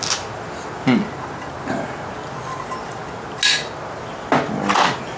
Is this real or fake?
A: real